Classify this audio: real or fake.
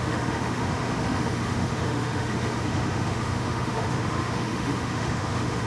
fake